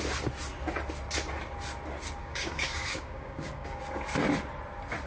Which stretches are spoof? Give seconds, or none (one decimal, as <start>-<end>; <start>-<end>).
2.2-3.8